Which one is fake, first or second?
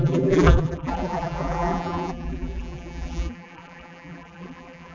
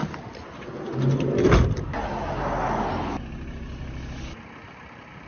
first